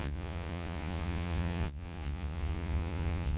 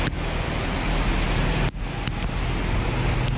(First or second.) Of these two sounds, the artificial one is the first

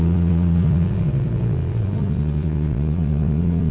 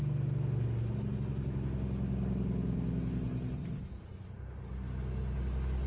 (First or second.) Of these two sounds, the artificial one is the first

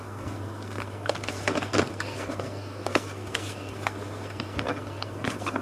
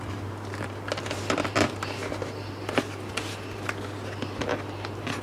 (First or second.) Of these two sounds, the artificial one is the first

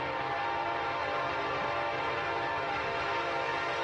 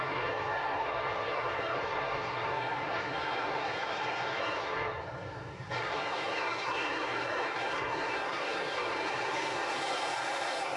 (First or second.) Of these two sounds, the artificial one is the second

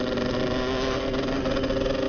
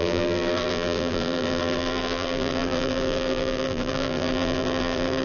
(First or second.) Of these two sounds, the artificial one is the second